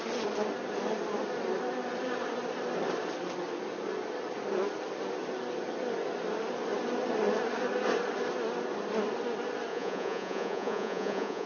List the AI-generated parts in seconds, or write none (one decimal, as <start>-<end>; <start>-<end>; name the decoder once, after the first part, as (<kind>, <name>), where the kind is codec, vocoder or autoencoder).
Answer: 9.7-11.5 (vocoder, Vocos)